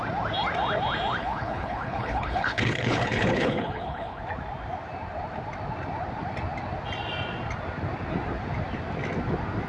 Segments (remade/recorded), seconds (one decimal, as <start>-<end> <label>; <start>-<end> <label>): 0.0-1.2 recorded; 1.2-4.2 remade; 4.2-9.7 recorded